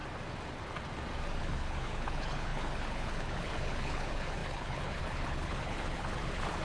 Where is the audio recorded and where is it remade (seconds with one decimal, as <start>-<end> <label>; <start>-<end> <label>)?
0.0-1.4 recorded; 1.4-6.6 remade